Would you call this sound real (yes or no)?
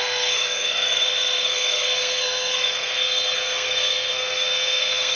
no